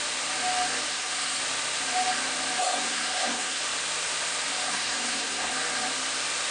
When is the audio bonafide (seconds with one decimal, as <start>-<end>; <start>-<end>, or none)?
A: 0.0-0.9; 1.4-2.6; 3.6-4.7; 5.5-6.5